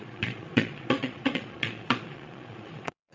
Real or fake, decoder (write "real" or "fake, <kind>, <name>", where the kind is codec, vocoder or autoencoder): fake, vocoder, Vocos